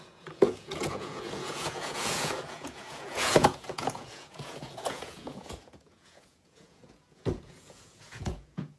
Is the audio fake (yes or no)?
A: yes